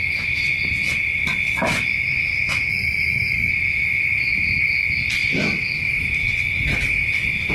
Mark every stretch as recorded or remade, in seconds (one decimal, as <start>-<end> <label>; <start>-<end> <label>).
0.0-2.7 recorded; 2.7-3.5 remade; 3.5-7.5 recorded